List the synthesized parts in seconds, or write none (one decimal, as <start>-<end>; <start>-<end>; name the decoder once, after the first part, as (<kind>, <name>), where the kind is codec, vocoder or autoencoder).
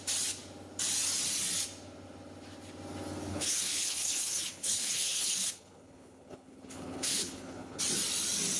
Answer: 3.3-7.8 (codec, HILCodec)